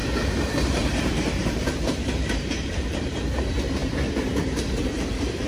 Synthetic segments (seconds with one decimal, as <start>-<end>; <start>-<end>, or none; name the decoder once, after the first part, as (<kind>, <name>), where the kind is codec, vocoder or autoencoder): 0.6-5.5 (vocoder, BigVGAN v2)